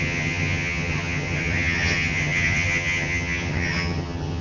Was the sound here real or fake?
fake